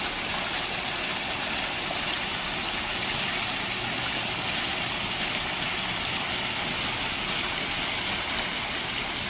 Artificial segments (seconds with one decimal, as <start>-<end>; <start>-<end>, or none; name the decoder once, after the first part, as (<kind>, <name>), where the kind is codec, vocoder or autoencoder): none